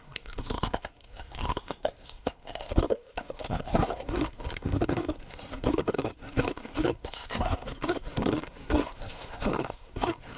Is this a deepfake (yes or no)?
yes